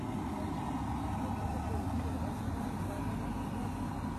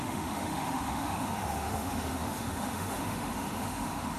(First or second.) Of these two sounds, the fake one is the second